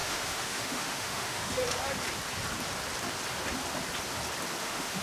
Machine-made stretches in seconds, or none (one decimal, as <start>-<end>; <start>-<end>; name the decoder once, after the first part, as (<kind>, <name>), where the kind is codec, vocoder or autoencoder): 0.0-1.6 (autoencoder, DAC-VAE); 4.6-5.0